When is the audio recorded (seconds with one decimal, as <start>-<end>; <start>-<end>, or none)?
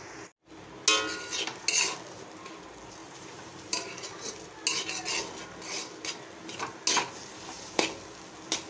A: 0.0-3.0; 3.8-7.2; 7.8-8.7